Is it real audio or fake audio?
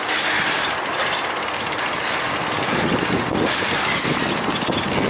real